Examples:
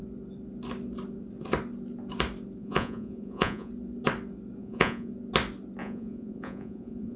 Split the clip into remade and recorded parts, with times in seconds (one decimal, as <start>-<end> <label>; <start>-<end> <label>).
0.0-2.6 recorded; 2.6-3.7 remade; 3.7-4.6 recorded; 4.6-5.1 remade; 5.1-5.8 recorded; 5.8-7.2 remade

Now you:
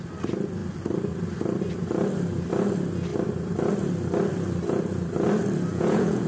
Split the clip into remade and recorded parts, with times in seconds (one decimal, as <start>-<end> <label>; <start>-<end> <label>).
0.0-5.7 recorded; 5.7-6.3 remade

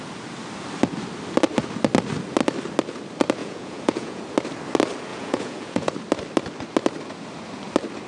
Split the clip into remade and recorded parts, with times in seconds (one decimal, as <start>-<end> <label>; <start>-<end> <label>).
0.0-3.4 recorded; 3.4-4.2 remade; 4.2-5.1 recorded; 5.1-5.9 remade; 5.9-8.1 recorded

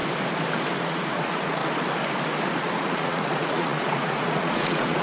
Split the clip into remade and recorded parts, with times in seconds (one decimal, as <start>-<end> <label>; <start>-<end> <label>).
0.0-0.8 recorded; 0.8-1.6 remade; 1.6-2.5 recorded; 2.5-5.0 remade